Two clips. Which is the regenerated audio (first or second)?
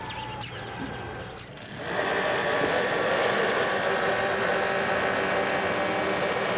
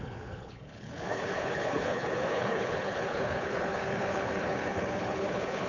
second